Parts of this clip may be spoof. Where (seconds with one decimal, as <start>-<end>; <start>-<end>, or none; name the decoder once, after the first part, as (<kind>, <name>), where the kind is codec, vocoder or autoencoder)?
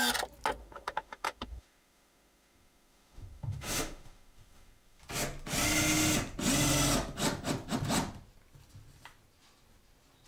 0.6-5.0 (autoencoder, DAC-VAE)